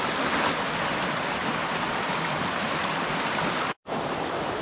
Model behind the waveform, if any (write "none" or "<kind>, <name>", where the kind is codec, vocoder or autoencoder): none